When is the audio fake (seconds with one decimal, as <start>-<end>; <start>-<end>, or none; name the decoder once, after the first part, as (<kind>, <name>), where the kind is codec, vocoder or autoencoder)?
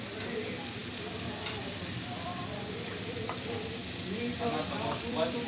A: 0.0-3.8 (vocoder, BigVGAN v2); 4.4-5.5